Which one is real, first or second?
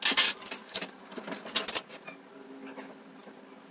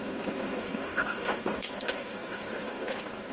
first